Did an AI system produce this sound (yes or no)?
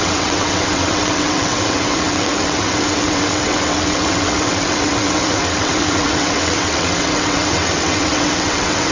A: yes